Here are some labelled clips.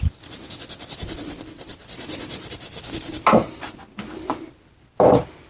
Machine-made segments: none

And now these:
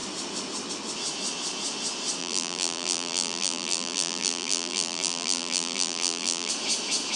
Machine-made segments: 2.2-6.5

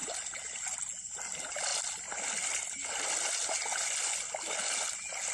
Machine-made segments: none

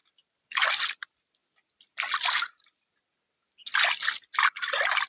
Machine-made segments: 0.0-0.7

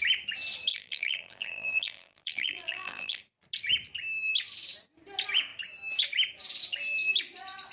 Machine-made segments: 0.7-3.2

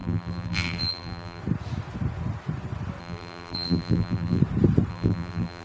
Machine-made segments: 0.0-1.4; 3.0-4.4; 4.9-5.6

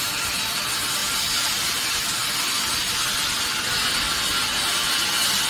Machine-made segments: 1.0-2.4